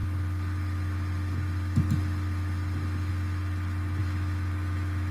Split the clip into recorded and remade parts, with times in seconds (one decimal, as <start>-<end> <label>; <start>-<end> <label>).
0.0-4.0 recorded; 4.0-5.1 remade